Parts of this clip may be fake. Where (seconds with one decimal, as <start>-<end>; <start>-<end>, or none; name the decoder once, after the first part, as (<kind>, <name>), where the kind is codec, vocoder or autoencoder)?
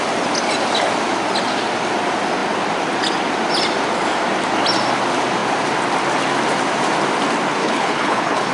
7.6-8.5 (codec, HILCodec)